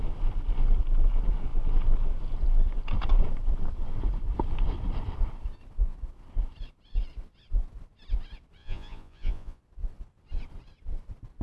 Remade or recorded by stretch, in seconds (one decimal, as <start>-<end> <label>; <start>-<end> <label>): 0.0-8.6 recorded; 8.6-9.6 remade; 9.6-11.4 recorded